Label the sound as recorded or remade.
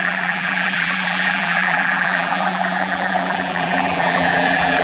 remade